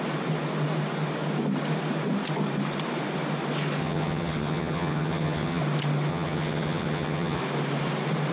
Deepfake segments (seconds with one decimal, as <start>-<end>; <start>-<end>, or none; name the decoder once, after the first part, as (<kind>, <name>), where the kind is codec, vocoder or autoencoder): 3.8-5.6 (vocoder, HiFi-GAN); 6.1-7.4